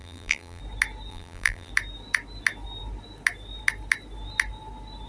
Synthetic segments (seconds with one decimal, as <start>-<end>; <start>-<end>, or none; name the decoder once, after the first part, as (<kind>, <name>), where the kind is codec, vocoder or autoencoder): 0.0-0.6 (vocoder, BigVGAN v2); 1.1-1.7